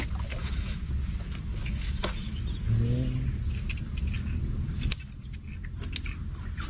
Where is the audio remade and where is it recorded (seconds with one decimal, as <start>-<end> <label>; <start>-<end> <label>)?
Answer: 0.0-0.4 recorded; 0.4-0.9 remade; 0.9-1.5 recorded; 1.5-2.4 remade; 2.4-6.7 recorded